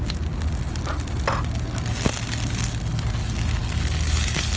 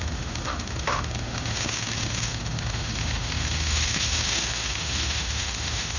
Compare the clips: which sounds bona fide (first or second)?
first